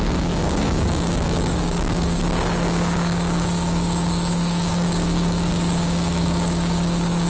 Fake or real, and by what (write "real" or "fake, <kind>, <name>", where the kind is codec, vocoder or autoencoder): fake, codec, DAC